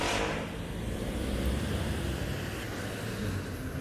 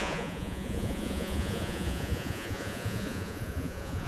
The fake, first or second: second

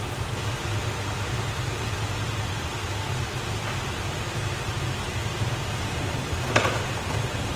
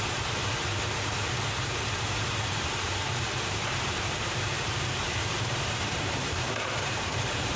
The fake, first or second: second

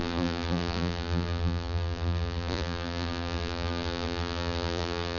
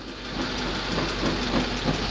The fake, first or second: first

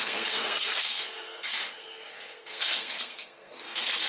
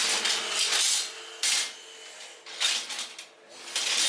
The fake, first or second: first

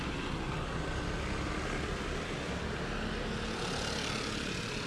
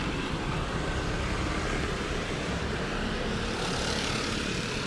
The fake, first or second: second